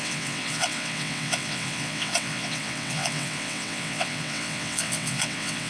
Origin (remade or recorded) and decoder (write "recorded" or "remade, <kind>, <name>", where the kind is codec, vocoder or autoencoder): remade, vocoder, WaveNeXt